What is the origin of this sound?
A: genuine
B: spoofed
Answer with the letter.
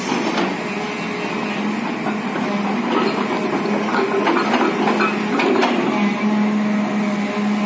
A